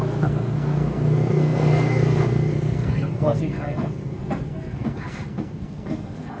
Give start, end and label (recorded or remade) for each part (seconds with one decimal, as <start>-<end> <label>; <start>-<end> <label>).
0.0-6.4 remade